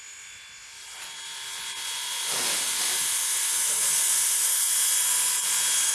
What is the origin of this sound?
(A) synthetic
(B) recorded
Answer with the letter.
B